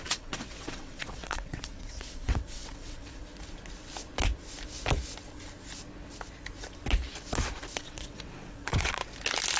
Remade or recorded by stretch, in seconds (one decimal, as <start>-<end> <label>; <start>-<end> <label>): 0.0-3.2 remade; 3.2-7.8 recorded; 7.8-9.0 remade; 9.0-9.6 recorded